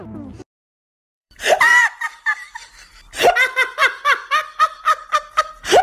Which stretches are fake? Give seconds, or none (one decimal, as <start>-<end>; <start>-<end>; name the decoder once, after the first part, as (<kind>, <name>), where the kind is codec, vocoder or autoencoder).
0.0-2.3 (vocoder, BigVGAN v2); 4.6-5.0